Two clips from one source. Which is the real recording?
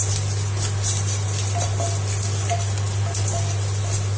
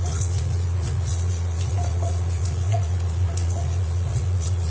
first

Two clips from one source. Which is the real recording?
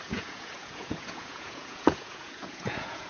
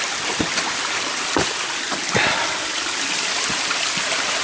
second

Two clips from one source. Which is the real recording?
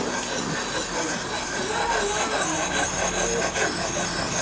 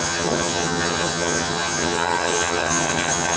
first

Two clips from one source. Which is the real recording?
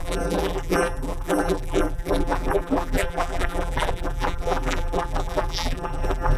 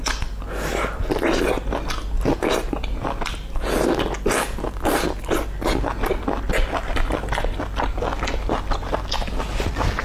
second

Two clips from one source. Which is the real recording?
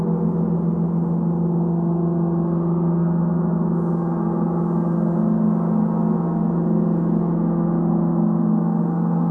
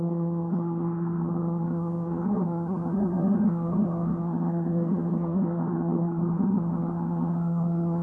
first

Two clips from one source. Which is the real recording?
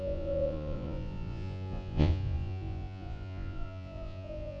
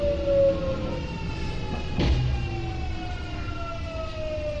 second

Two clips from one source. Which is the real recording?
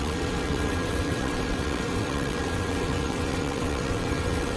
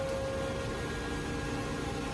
second